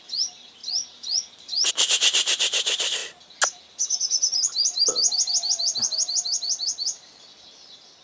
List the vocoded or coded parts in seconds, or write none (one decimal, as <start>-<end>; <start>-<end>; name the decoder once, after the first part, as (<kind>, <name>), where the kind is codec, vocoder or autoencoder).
none

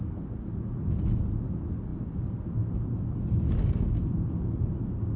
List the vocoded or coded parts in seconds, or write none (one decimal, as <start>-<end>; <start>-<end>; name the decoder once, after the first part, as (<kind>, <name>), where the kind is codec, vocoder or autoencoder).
none

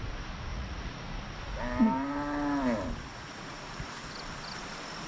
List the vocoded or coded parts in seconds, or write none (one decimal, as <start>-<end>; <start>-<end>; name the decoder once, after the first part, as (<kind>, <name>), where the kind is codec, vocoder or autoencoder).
0.5-1.0 (vocoder, Vocos); 3.1-3.8

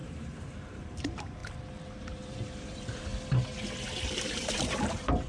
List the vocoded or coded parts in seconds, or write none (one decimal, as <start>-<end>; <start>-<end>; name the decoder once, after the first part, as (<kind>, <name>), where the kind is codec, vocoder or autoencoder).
0.0-1.4 (vocoder, BigVGAN v2); 2.0-3.1; 4.2-5.3

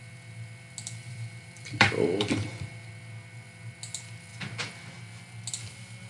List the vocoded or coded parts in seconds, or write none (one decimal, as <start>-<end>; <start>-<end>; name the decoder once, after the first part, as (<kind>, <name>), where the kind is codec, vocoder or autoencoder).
1.0-2.9 (vocoder, BigVGAN v2)

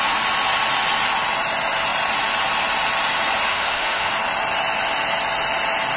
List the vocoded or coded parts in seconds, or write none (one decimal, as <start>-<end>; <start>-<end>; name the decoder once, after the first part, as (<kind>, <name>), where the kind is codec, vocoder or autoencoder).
3.5-4.1 (autoencoder, DAC-VAE)

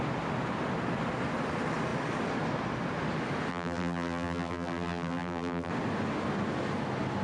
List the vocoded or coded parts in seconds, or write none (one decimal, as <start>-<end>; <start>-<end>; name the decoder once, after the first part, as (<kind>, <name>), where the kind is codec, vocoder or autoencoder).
3.5-5.7 (vocoder, BigVGAN v2)

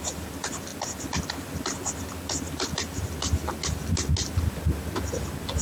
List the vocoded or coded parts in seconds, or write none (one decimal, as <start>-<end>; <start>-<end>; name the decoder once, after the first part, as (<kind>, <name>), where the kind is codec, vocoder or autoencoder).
none